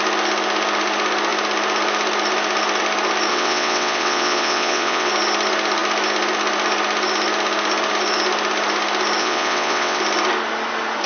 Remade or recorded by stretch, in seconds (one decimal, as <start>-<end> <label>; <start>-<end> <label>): 0.0-3.3 recorded; 3.3-5.1 remade; 5.1-9.2 recorded; 9.2-10.0 remade; 10.0-11.1 recorded